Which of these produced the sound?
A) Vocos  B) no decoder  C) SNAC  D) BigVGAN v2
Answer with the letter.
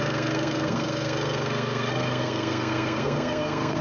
C